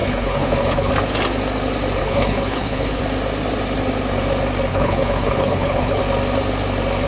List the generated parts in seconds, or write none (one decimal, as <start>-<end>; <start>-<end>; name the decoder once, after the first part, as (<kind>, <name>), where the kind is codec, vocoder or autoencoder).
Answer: 0.0-0.9 (codec, HILCodec); 2.0-3.0; 4.7-6.0